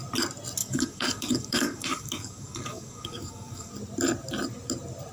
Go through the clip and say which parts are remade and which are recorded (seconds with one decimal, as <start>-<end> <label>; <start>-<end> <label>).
0.0-0.6 recorded; 0.6-3.7 remade; 3.7-5.1 recorded